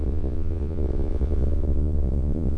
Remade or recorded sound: remade